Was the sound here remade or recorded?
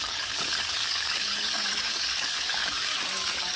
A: remade